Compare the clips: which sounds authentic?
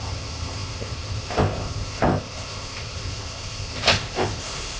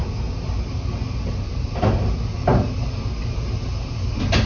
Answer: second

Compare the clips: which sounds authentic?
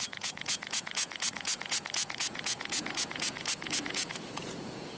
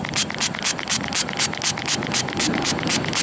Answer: second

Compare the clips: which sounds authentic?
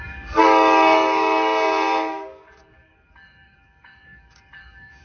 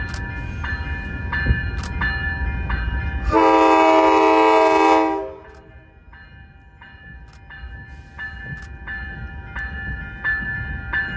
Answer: second